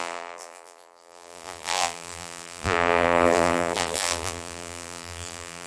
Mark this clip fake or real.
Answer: fake